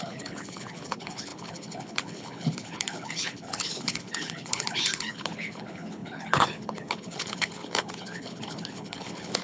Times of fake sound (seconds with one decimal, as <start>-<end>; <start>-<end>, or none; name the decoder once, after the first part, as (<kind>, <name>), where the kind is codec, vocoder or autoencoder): 0.0-9.4 (codec, HILCodec)